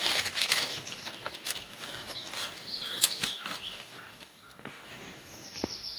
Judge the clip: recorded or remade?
remade